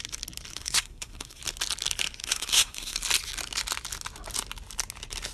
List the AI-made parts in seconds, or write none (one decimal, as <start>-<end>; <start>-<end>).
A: 0.5-1.4; 2.2-3.0